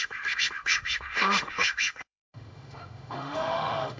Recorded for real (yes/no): no